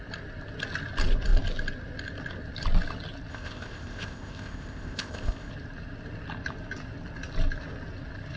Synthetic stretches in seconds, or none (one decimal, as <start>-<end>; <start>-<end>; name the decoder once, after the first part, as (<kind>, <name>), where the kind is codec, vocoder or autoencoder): 3.3-5.5 (codec, ZipCodec)